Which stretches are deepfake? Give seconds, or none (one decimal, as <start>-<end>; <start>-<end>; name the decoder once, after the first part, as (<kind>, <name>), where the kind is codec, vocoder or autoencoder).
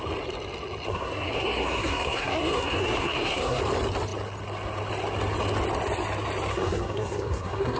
0.9-3.6 (codec, SNAC); 6.5-7.8